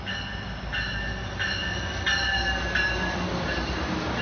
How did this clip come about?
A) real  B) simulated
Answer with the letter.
A